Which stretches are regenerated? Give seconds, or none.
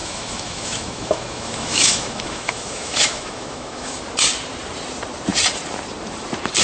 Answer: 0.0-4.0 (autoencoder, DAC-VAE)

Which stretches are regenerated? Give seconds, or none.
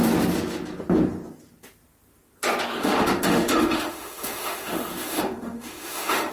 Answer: 2.8-6.3 (autoencoder, DAC-VAE)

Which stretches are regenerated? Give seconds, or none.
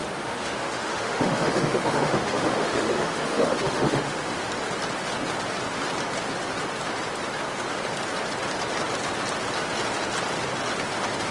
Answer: 0.0-4.5 (autoencoder, DAC-VAE)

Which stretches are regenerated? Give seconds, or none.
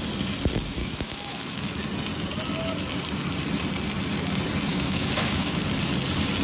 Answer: 0.8-1.8 (autoencoder, DAC-VAE); 4.7-5.6